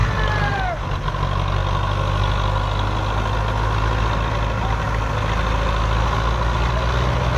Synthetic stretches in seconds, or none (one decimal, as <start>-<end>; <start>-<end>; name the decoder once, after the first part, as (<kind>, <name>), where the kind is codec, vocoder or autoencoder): 0.0-1.1 (vocoder, BigVGAN v2)